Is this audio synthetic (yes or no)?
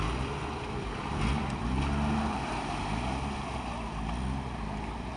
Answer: no